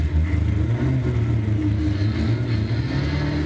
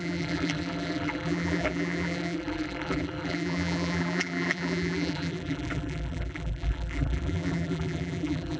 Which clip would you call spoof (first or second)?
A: second